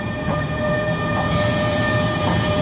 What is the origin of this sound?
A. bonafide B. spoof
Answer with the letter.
B